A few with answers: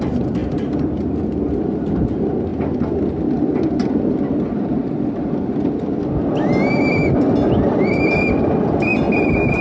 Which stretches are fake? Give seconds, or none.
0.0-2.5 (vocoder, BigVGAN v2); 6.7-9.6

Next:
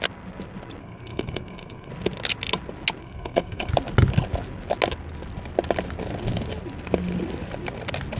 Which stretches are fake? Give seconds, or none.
0.8-1.9 (codec, SNAC); 3.0-3.7

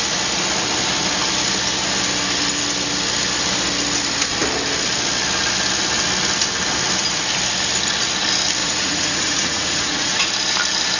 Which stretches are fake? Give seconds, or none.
8.6-10.3 (vocoder, Vocos)